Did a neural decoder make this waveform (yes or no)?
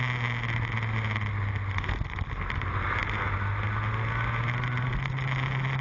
no